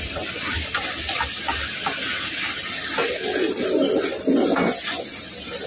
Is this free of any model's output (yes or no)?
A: yes